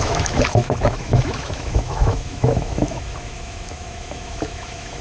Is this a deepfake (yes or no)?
yes